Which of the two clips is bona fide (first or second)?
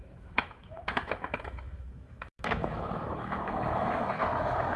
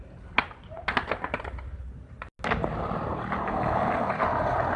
second